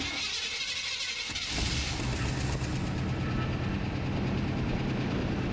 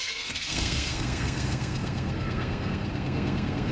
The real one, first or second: first